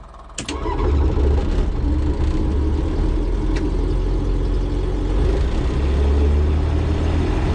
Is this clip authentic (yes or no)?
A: yes